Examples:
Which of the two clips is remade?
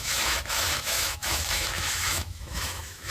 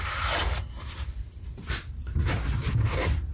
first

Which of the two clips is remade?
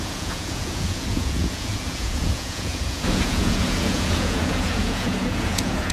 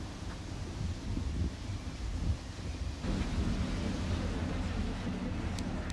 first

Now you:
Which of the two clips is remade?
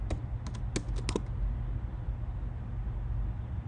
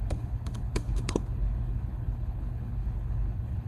second